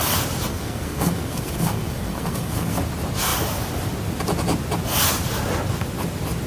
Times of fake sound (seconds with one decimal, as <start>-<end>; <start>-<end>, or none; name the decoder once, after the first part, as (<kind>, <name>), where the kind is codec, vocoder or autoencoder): 0.5-2.8 (codec, SNAC)